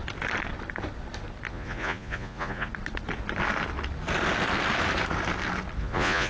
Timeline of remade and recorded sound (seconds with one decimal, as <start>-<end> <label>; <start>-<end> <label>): 0.0-1.5 recorded; 1.5-2.7 remade; 2.7-5.8 recorded; 5.8-6.3 remade